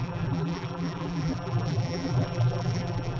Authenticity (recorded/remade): remade